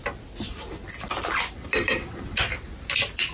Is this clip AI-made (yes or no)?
no